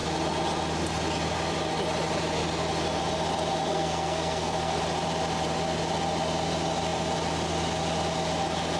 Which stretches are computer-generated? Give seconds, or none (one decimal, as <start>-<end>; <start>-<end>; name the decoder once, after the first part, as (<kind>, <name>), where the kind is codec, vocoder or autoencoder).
3.7-4.8 (codec, SNAC)